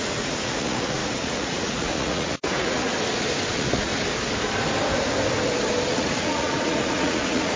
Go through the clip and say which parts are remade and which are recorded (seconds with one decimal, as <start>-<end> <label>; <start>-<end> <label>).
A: 0.0-2.9 remade; 2.9-3.5 recorded; 3.5-3.9 remade; 3.9-5.9 recorded; 5.9-7.6 remade